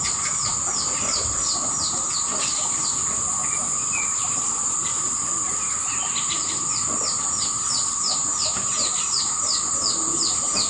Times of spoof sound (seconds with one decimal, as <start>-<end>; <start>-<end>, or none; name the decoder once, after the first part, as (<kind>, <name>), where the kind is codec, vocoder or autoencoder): none